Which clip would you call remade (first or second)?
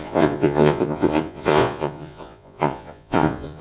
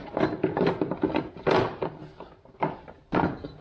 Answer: first